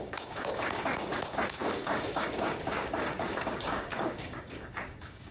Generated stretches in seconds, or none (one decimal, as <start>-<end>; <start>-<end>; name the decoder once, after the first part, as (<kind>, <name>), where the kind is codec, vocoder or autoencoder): 0.0-5.3 (codec, DAC)